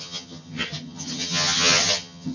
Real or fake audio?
fake